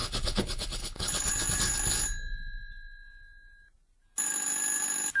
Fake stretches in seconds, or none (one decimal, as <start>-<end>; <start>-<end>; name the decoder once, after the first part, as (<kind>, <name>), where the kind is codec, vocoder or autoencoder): 0.0-1.3 (codec, HILCodec)